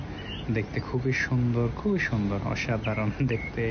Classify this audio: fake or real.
real